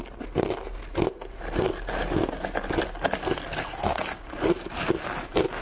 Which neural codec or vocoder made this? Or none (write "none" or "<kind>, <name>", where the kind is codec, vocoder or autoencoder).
none